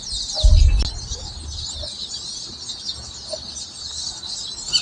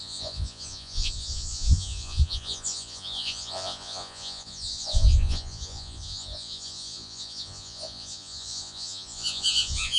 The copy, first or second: second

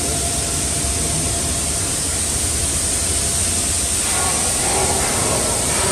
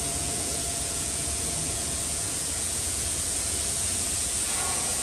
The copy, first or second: second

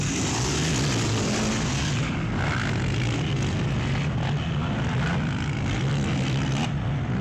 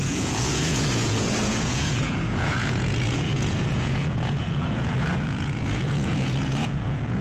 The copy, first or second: second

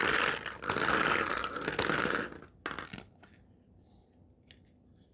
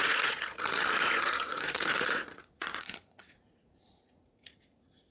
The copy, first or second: second